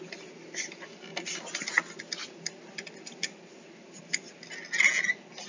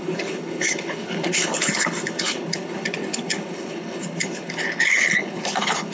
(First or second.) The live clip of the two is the first